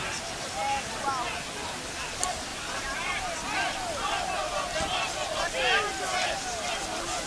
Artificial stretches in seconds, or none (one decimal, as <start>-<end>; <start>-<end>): 2.5-3.2